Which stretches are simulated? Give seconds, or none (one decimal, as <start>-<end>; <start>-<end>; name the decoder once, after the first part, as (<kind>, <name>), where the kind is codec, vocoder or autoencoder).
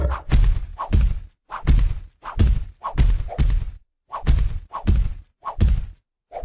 3.8-4.6 (vocoder, BigVGAN v2)